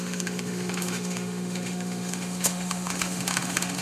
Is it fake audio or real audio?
fake